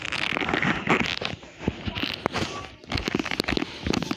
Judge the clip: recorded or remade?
recorded